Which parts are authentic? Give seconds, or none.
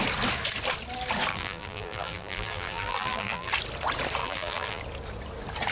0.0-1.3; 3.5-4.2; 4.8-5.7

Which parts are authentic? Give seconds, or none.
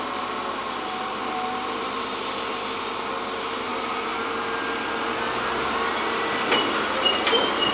0.0-7.7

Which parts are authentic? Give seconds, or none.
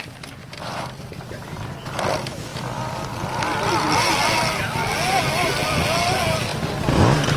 0.0-7.4